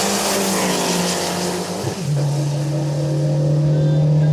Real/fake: real